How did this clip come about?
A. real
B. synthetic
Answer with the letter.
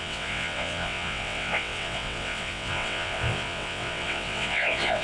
B